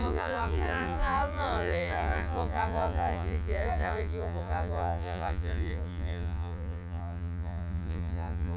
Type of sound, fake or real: fake